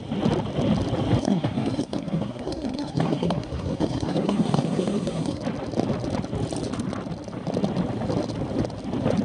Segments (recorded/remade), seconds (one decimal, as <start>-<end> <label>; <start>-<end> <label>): 0.0-1.2 recorded; 1.2-5.4 remade; 5.4-9.2 recorded